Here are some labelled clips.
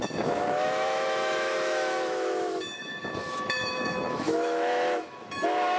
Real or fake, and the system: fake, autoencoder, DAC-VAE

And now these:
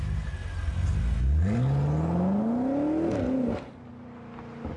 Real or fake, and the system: real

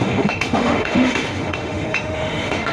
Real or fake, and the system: fake, autoencoder, DAC-VAE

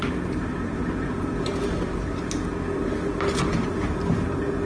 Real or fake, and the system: real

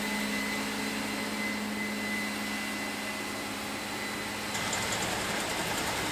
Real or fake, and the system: real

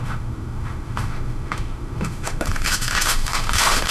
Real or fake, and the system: fake, autoencoder, DAC-VAE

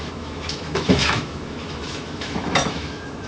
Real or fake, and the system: fake, autoencoder, DAC-VAE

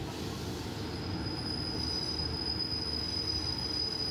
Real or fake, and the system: real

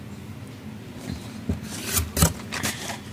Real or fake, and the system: real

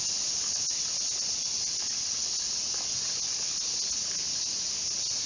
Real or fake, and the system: real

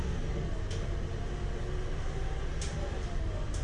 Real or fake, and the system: real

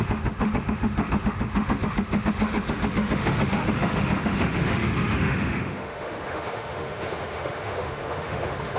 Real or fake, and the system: fake, autoencoder, DAC-VAE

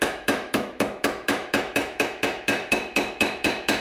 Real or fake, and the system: fake, autoencoder, DAC-VAE